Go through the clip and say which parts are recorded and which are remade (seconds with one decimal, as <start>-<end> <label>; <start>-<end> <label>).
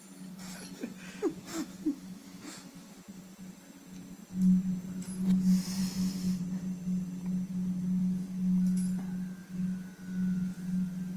0.0-1.5 recorded; 1.5-2.9 remade; 2.9-5.8 recorded; 5.8-6.3 remade; 6.3-11.2 recorded